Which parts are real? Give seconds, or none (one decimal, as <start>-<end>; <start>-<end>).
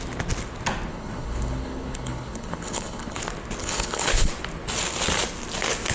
0.0-0.9; 3.2-3.6; 4.3-5.9